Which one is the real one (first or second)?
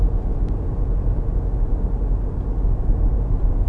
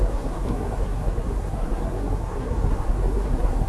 first